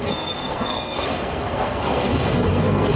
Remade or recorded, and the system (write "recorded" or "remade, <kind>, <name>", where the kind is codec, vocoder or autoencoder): remade, codec, SNAC